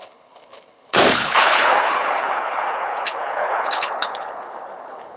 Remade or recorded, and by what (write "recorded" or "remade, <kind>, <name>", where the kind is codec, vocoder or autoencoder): remade, codec, HILCodec